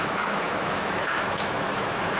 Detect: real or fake fake